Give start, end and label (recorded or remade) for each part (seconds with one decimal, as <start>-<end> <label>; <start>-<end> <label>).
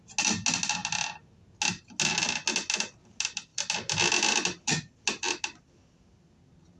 0.0-6.8 recorded